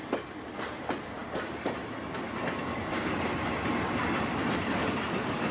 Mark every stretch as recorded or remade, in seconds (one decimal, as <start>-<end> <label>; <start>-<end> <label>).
0.0-5.5 recorded